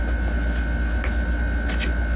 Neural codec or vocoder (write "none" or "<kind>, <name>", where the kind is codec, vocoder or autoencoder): none